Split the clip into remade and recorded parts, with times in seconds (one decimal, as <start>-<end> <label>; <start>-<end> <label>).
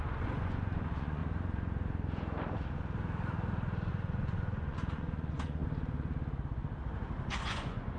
0.0-1.2 remade; 1.2-3.9 recorded; 3.9-5.6 remade; 5.6-7.3 recorded; 7.3-8.0 remade